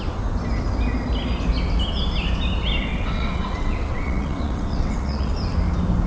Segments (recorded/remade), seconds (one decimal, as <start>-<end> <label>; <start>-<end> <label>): 0.0-2.9 recorded; 2.9-5.3 remade; 5.3-6.1 recorded